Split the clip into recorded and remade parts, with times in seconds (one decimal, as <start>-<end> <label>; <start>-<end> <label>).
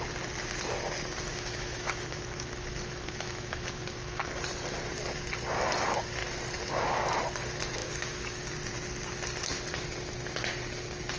0.0-1.3 recorded; 1.3-4.2 remade; 4.2-7.8 recorded; 7.8-8.5 remade; 8.5-11.2 recorded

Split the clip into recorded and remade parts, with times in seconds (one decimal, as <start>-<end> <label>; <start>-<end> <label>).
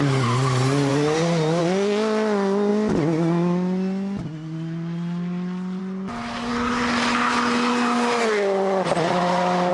0.0-9.7 recorded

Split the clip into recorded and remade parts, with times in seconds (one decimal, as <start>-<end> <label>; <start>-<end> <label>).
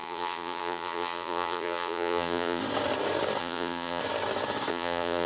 0.0-2.6 remade; 2.6-3.4 recorded; 3.4-4.0 remade; 4.0-4.7 recorded; 4.7-5.3 remade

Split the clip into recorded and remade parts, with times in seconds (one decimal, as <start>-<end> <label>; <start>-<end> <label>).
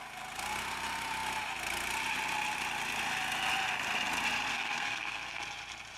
0.0-4.5 recorded; 4.5-5.4 remade; 5.4-6.0 recorded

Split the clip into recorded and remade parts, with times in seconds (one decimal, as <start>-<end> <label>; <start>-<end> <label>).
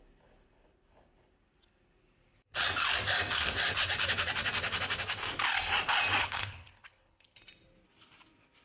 0.0-6.2 recorded; 6.2-7.4 remade; 7.4-8.6 recorded